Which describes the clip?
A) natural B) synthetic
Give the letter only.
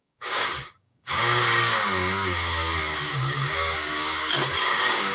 B